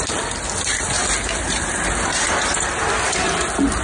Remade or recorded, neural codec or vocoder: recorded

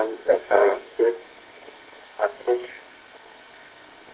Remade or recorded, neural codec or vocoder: remade, codec, SNAC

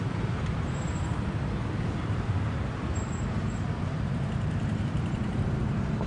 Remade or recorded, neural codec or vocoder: remade, vocoder, BigVGAN v2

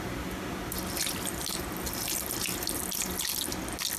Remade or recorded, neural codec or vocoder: recorded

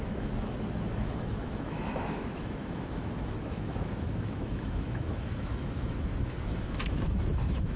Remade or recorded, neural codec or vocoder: remade, autoencoder, DAC-VAE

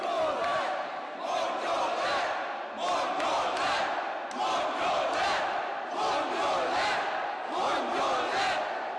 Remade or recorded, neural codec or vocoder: recorded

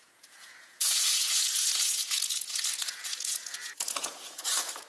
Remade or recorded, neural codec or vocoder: remade, vocoder, Vocos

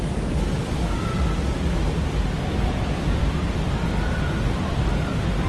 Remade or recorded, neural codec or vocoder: recorded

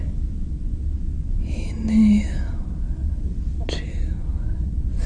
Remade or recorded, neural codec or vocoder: recorded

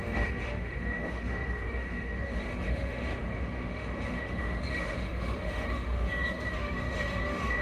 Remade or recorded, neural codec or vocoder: remade, autoencoder, DAC-VAE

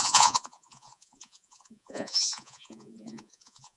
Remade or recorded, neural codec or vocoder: remade, vocoder, Vocos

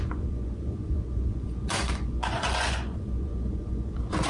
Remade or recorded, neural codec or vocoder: remade, vocoder, Vocos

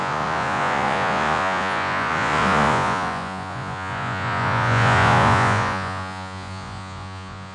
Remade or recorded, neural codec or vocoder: remade, vocoder, Vocos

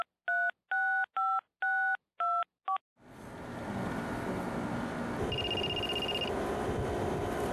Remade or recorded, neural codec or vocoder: recorded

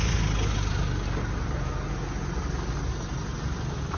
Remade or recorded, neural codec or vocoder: recorded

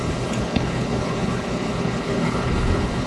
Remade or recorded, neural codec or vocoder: remade, codec, HILCodec